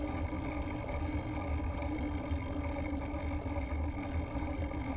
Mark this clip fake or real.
real